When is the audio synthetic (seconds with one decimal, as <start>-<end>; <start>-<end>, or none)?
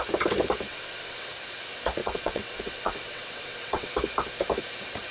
0.7-1.3; 2.0-3.9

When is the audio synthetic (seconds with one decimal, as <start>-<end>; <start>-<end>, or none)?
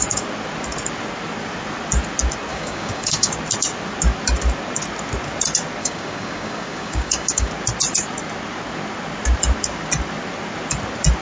2.5-3.3; 5.8-7.5